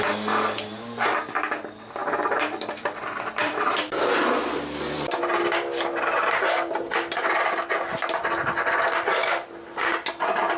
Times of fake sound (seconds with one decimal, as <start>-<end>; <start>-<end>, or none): 2.0-5.2